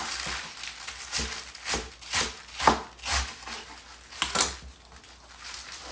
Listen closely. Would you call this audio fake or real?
real